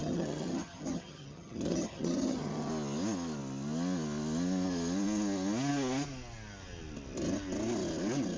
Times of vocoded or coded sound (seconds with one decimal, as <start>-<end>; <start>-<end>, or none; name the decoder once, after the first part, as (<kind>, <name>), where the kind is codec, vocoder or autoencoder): 0.0-2.7 (vocoder, HiFi-GAN)

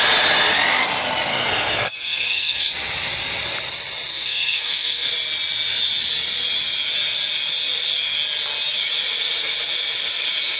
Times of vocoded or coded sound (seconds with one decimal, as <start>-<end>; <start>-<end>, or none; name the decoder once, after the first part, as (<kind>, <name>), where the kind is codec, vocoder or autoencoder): 1.3-2.7 (codec, SNAC); 4.1-5.1

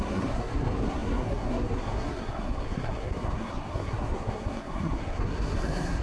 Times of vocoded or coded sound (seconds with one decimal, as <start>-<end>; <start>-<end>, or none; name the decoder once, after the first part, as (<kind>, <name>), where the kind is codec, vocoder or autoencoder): 0.0-6.0 (codec, SNAC)

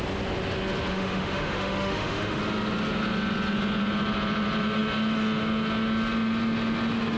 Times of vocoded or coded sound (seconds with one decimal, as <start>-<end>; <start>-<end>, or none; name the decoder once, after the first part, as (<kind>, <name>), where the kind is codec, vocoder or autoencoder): 0.9-2.4 (autoencoder, DAC-VAE)